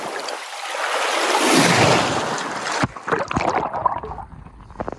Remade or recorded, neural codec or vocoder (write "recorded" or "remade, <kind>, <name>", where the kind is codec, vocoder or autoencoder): recorded